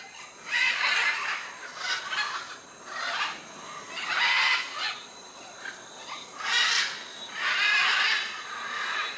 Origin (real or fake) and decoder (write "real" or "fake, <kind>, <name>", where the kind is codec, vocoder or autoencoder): real